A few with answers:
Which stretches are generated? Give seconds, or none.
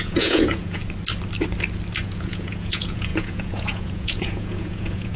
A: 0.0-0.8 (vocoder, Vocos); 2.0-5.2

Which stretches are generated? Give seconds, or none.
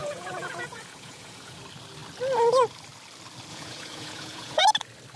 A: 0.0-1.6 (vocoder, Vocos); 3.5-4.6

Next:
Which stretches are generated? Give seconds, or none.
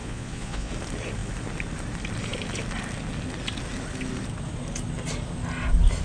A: 0.0-0.7 (vocoder, Vocos)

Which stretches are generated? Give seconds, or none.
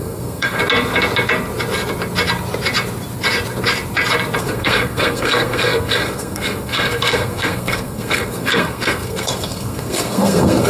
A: 0.0-0.6 (codec, SNAC); 4.4-10.7